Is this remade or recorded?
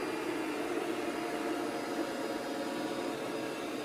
recorded